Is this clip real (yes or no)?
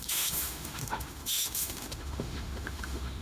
no